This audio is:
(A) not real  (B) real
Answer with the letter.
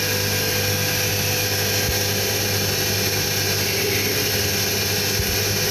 B